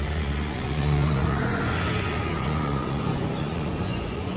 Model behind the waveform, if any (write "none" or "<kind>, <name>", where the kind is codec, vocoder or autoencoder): vocoder, Vocos